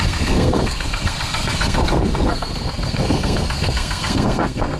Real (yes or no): no